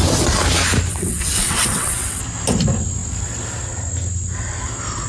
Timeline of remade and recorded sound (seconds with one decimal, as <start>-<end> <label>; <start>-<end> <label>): 0.0-0.9 recorded; 0.9-2.2 remade; 2.2-5.1 recorded